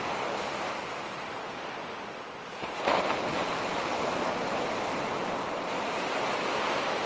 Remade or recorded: recorded